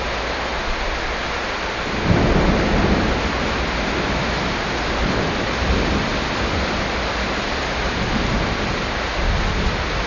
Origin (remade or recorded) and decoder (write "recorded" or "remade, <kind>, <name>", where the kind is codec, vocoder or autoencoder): recorded